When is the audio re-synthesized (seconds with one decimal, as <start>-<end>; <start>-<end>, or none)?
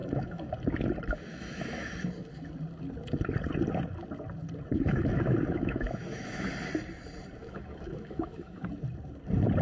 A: 0.0-0.5; 1.3-1.9; 4.7-6.5; 7.4-8.6